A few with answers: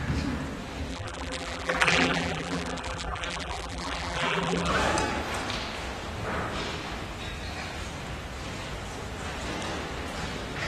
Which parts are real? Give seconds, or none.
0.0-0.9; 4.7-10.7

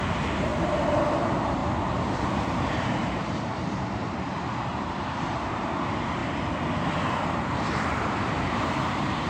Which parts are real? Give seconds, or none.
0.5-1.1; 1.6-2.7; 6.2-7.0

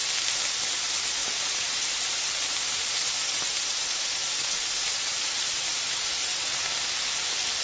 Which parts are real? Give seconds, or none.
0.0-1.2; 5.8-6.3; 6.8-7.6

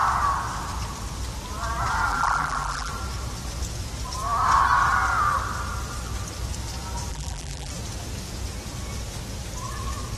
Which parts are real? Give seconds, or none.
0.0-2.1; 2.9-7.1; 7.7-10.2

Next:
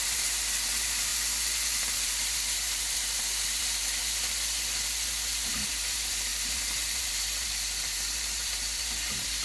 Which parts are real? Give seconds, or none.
1.1-1.8; 4.0-5.5

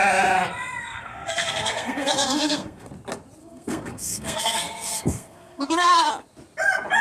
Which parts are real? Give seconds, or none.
0.0-0.8; 2.9-3.4; 6.1-7.0

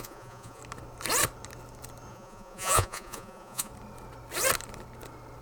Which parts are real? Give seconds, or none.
0.6-2.1; 3.7-5.4